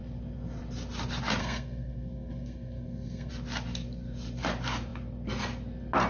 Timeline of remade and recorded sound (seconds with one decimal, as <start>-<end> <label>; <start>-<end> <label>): 0.0-1.4 recorded; 1.4-3.3 remade; 3.3-6.1 recorded